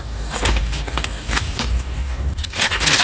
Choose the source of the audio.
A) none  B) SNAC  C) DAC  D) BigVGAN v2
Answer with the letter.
C